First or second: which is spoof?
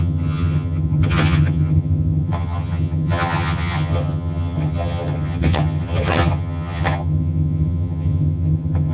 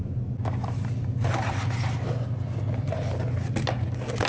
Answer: first